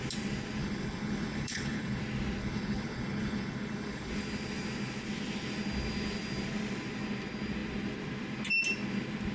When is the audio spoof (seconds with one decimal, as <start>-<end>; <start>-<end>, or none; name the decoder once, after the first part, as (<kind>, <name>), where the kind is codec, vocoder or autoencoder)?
0.6-2.0 (codec, HILCodec); 2.4-4.1